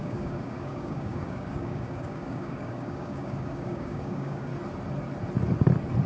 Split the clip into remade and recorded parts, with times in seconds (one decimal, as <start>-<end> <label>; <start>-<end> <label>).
0.0-4.5 remade; 4.5-6.1 recorded